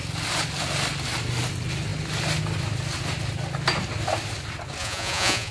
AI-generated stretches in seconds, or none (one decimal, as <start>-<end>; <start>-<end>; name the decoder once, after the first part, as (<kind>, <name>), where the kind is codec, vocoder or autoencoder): 4.8-5.5 (vocoder, Vocos)